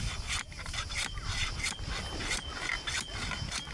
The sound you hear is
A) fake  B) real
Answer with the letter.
B